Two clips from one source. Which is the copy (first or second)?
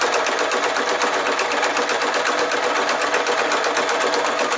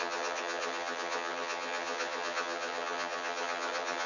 second